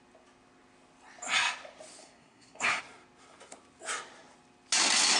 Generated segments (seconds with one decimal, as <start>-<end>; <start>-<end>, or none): 2.0-2.8